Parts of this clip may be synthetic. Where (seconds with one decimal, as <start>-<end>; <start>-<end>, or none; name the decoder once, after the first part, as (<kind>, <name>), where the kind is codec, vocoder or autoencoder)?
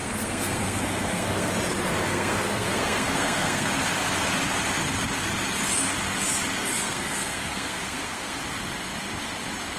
0.0-1.5 (codec, SNAC); 2.1-3.7; 6.7-8.4